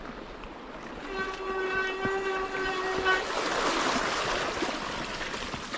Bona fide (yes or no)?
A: yes